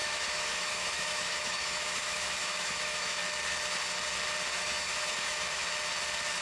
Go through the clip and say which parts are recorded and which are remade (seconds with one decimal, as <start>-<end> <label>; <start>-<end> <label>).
0.0-3.2 remade; 3.2-4.5 recorded; 4.5-5.6 remade; 5.6-6.4 recorded